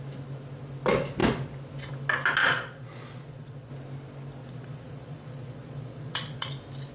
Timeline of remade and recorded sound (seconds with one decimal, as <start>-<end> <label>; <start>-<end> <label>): 0.0-2.4 recorded; 2.4-3.7 remade; 3.7-4.4 recorded; 4.4-6.5 remade; 6.5-6.9 recorded